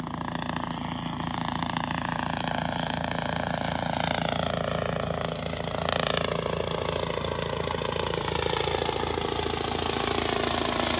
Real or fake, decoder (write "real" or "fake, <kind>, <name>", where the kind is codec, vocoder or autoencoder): real